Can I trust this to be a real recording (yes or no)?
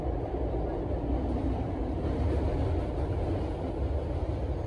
yes